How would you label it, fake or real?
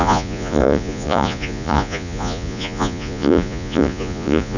fake